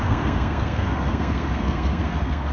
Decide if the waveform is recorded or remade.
remade